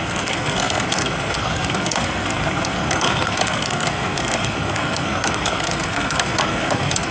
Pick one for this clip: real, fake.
fake